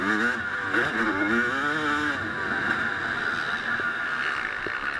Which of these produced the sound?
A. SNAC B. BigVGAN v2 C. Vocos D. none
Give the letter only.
D